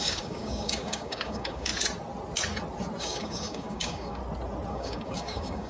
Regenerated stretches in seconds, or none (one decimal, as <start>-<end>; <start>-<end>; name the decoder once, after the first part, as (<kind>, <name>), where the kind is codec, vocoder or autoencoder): 0.0-1.7 (codec, DAC); 3.0-4.2; 4.7-5.7